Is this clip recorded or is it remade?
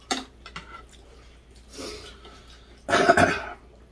recorded